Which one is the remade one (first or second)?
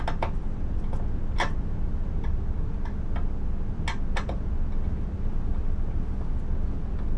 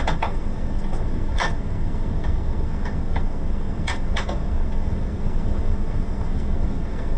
second